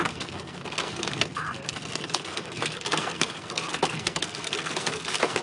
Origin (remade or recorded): remade